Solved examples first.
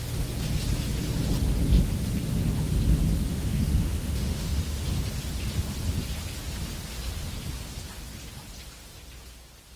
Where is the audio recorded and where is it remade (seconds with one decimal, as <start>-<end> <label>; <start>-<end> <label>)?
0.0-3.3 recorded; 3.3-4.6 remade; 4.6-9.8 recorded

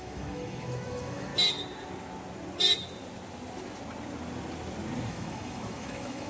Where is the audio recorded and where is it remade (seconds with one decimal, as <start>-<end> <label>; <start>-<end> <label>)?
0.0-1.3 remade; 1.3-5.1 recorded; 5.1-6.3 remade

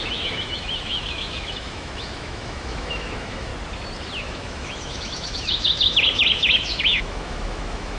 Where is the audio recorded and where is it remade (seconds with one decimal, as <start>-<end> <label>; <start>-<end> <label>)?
0.0-3.5 remade; 3.5-4.2 recorded; 4.2-8.0 remade

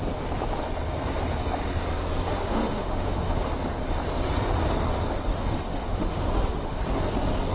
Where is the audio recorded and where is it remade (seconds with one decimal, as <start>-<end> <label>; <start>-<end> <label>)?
0.0-2.3 recorded; 2.3-3.4 remade; 3.4-5.3 recorded; 5.3-6.8 remade; 6.8-7.5 recorded